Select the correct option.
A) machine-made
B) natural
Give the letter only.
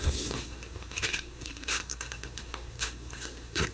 A